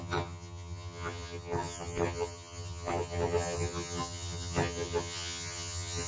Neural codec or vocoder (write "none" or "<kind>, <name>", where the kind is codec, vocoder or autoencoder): vocoder, HiFi-GAN